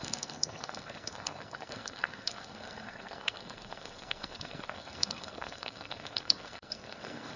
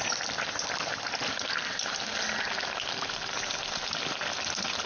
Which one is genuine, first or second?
second